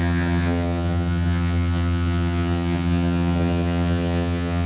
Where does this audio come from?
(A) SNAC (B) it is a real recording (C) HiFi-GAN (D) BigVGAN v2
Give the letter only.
C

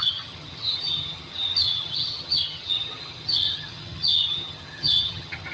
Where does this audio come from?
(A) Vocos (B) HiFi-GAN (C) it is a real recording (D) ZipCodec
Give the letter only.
B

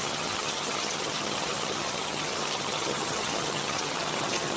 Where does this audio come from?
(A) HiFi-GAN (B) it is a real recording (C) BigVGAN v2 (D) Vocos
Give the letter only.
A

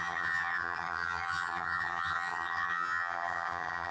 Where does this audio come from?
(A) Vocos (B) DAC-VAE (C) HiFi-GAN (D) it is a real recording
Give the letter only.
C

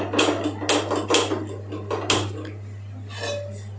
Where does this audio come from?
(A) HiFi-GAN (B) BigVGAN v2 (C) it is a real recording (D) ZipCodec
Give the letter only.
C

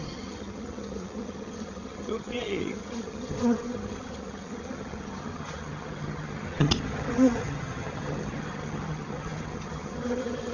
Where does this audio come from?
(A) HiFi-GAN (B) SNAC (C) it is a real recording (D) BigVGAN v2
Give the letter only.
A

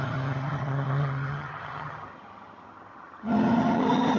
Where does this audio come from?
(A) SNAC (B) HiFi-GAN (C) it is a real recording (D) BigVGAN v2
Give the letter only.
B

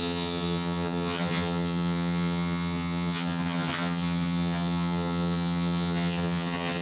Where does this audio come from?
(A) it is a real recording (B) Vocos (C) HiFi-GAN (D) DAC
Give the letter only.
C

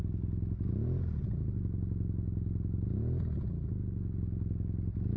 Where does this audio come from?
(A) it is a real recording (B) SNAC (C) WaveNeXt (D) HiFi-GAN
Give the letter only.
A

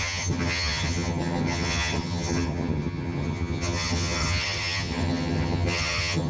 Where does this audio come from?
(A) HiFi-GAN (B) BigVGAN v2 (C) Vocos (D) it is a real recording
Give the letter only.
A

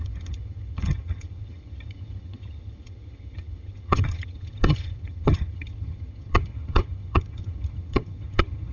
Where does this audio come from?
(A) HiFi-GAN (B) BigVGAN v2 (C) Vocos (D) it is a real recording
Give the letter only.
A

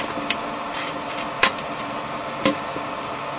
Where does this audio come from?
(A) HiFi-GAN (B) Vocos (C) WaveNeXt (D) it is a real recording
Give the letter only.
D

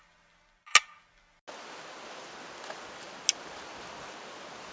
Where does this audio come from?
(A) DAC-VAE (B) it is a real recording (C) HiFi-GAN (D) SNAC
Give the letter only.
B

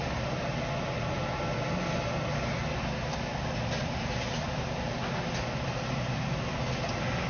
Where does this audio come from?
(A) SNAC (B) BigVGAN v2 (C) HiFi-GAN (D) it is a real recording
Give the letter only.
D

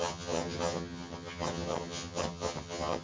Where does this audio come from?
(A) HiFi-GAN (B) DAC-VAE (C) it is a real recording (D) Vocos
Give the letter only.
A